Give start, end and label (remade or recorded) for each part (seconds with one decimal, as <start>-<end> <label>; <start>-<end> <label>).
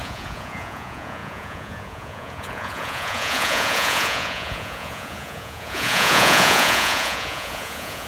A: 0.0-8.1 remade